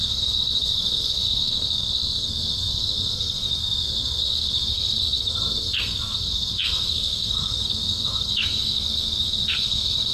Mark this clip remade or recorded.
remade